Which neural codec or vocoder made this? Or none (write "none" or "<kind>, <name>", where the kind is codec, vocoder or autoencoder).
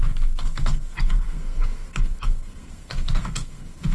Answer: codec, SNAC